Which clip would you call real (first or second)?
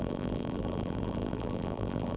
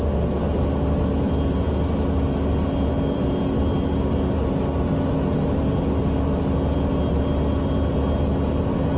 second